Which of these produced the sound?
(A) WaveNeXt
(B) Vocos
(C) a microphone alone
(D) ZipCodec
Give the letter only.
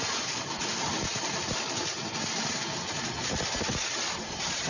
C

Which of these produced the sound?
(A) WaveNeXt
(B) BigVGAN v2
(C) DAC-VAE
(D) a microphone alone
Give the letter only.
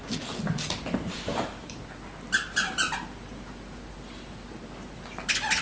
D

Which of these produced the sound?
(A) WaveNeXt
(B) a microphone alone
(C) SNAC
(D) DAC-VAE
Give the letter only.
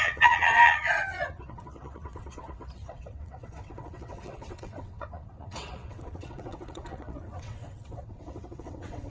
A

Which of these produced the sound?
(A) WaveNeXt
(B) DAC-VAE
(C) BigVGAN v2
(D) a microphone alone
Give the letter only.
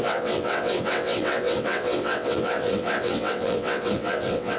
A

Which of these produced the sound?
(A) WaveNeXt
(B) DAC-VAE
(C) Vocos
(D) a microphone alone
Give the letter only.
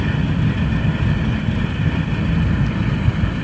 D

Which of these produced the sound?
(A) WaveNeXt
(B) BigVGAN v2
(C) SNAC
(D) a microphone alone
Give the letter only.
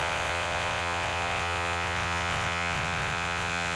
A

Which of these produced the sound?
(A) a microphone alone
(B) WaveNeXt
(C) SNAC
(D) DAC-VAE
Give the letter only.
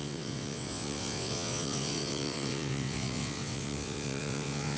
B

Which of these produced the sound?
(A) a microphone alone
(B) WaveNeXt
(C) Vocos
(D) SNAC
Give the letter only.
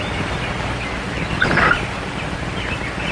A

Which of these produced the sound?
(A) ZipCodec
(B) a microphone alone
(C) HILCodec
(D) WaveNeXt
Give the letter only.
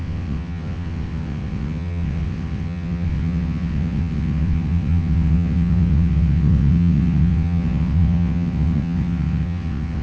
D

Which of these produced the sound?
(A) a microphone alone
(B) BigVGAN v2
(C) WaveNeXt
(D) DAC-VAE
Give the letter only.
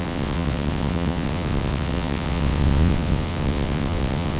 C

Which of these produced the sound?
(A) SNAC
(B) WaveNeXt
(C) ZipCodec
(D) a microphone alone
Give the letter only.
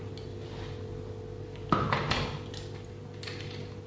D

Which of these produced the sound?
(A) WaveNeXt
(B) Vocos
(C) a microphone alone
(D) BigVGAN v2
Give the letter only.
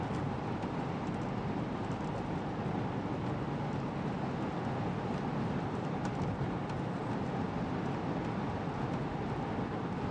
C